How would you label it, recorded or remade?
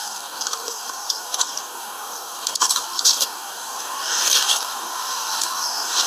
remade